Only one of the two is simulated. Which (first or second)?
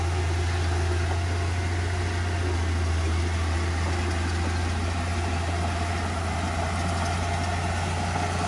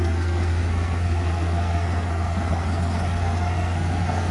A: second